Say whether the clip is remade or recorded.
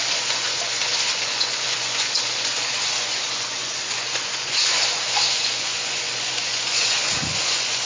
remade